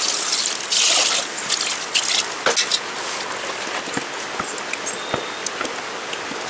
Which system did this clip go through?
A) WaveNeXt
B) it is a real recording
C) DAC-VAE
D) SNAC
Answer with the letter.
B